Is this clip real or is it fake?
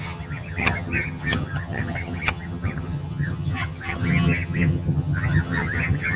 fake